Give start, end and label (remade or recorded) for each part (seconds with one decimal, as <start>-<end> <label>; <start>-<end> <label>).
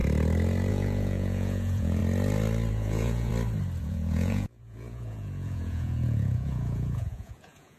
0.0-0.7 recorded; 0.7-2.0 remade; 2.0-2.7 recorded; 2.7-3.3 remade; 3.3-3.8 recorded; 3.8-7.8 remade